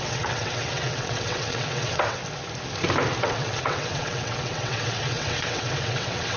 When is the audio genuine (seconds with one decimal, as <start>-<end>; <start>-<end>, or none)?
2.2-3.2